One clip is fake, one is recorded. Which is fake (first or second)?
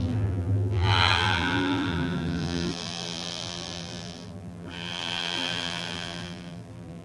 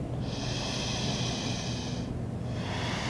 first